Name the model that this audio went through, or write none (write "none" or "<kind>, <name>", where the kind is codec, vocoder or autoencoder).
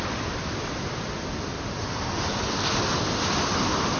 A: none